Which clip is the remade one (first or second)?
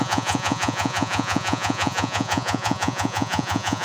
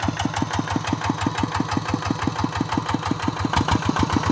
first